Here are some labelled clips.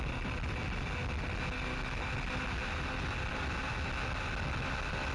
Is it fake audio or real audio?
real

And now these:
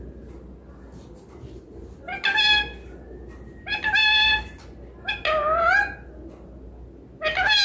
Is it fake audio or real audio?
real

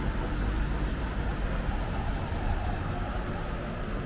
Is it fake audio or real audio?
real